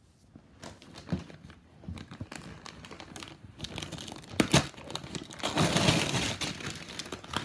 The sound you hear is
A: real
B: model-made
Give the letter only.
A